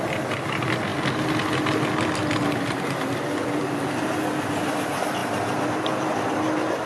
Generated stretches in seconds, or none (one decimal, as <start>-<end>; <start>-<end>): none

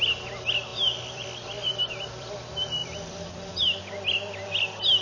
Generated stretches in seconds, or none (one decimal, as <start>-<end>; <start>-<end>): 0.7-2.3; 2.8-3.8